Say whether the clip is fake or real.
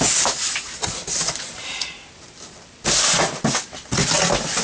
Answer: real